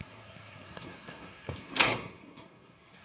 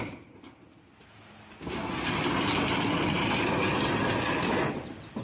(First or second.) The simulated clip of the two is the first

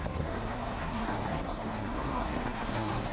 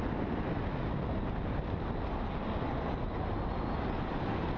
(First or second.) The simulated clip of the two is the first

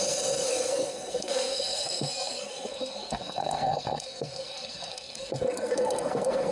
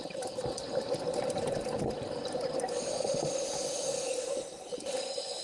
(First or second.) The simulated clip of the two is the first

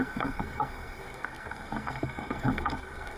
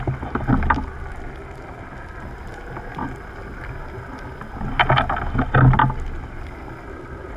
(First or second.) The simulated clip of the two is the first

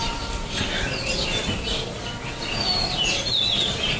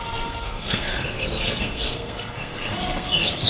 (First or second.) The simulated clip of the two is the second